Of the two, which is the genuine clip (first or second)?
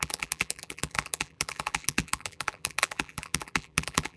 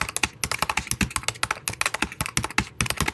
second